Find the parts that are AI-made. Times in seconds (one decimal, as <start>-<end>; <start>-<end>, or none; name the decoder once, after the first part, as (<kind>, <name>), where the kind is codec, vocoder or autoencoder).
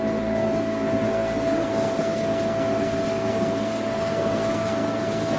0.0-5.4 (codec, SNAC)